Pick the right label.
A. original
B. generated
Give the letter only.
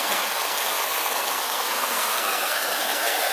B